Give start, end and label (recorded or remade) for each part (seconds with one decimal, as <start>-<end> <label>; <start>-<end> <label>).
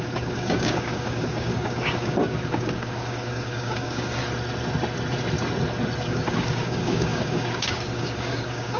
0.0-4.2 remade; 4.2-6.1 recorded; 6.1-8.8 remade